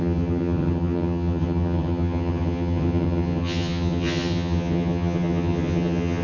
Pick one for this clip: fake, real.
fake